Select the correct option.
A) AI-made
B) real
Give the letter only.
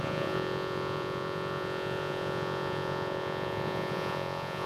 A